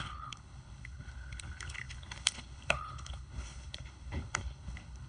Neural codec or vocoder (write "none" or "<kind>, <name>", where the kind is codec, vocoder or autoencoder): codec, HILCodec